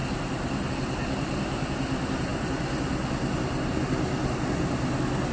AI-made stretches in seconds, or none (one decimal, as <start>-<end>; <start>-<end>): none